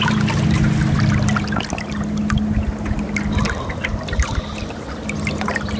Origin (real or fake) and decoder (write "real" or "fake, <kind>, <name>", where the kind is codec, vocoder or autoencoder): real